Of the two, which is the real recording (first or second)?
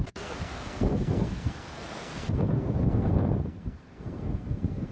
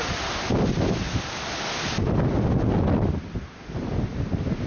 second